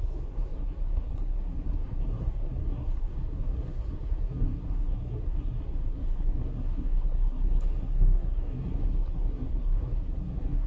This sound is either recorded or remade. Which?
remade